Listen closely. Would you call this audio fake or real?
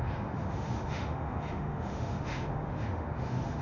fake